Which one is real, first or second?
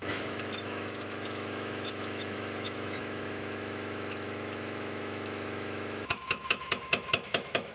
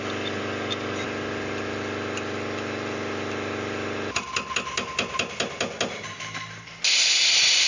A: second